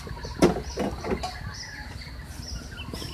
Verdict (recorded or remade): recorded